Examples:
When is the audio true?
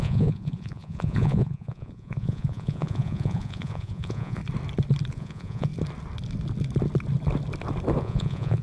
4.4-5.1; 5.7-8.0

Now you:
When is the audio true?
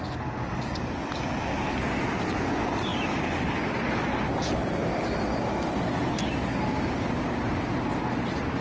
0.0-8.6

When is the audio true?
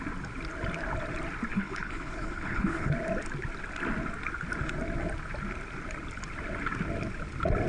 0.0-1.5; 2.9-7.7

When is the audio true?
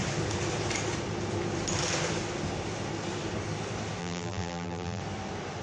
0.0-4.0; 5.0-5.6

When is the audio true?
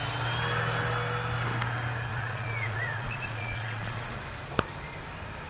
0.0-2.1; 4.2-5.5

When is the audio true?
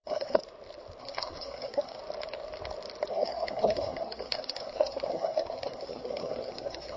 0.4-1.0; 2.0-3.1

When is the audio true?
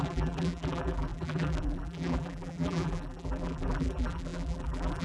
none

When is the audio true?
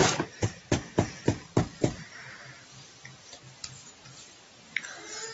0.9-5.3